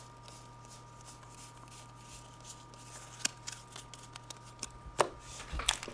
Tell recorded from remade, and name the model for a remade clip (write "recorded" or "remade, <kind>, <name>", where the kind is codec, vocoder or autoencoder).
recorded